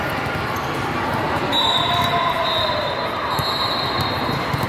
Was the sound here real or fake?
real